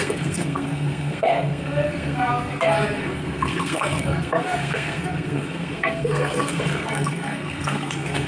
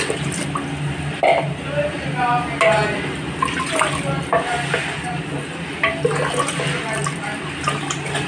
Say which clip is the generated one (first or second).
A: first